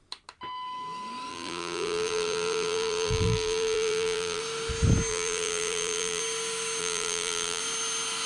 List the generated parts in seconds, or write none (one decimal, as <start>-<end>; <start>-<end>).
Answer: 1.3-4.4; 5.1-6.2; 6.8-7.6